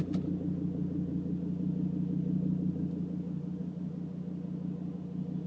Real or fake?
real